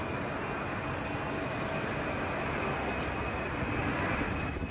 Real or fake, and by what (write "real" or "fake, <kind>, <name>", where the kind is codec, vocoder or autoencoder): real